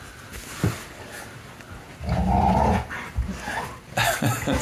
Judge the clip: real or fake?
real